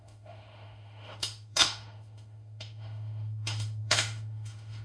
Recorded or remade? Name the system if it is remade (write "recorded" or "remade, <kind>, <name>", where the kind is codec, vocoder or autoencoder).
remade, autoencoder, DAC-VAE